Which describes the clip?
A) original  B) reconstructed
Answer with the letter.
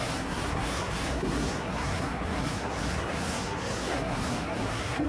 B